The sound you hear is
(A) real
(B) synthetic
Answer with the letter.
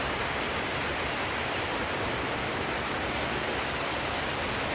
A